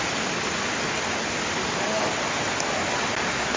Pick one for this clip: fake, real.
real